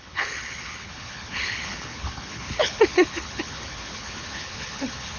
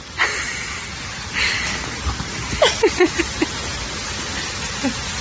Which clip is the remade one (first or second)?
first